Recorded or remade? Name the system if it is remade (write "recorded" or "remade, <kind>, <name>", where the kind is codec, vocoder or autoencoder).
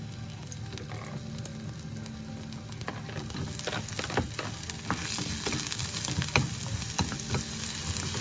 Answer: recorded